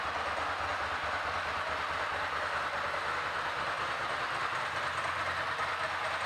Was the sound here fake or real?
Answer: real